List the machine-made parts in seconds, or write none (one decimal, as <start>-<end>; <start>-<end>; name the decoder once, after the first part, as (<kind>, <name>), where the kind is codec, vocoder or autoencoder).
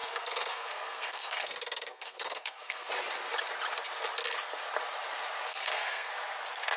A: 0.0-2.9 (codec, SNAC); 5.5-6.1